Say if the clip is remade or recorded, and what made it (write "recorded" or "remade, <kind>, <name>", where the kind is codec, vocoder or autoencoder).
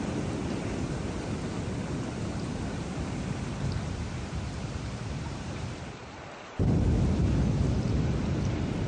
recorded